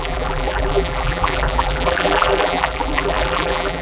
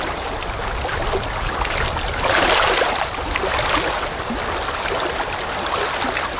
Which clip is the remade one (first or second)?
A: first